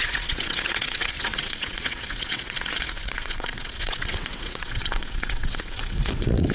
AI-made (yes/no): yes